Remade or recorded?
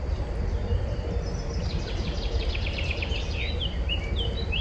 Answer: remade